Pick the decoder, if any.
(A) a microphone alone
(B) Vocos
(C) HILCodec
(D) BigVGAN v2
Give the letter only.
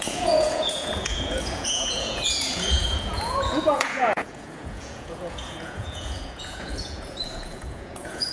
B